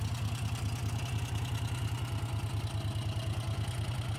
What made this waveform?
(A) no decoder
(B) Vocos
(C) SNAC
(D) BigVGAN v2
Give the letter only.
A